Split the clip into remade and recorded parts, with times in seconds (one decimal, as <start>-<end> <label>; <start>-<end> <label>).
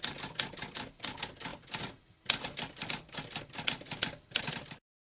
0.0-5.0 recorded